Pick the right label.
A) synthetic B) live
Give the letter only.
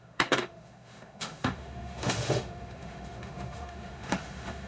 A